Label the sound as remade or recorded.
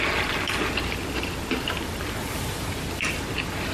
recorded